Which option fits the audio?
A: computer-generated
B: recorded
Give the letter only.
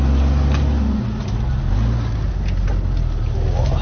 B